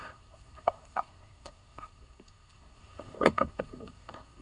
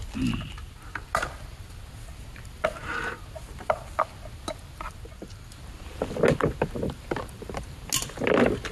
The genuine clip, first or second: second